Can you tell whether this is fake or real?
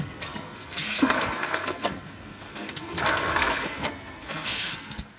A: fake